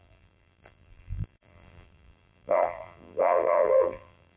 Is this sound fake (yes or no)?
yes